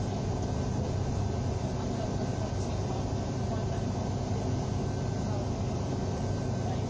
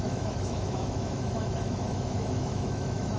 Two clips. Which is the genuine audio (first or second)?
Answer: first